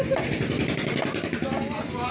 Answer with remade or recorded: recorded